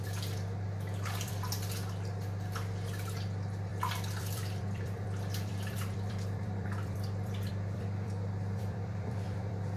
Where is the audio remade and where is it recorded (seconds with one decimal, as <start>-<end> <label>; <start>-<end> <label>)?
0.0-9.8 remade